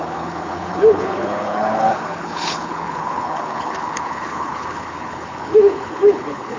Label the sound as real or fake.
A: fake